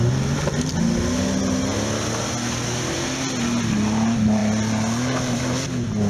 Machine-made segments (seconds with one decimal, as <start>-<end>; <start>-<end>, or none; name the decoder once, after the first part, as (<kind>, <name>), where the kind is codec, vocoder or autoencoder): none